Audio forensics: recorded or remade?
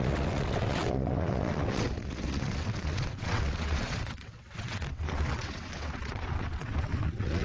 remade